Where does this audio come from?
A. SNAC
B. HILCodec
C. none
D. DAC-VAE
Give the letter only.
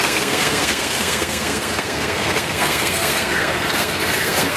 A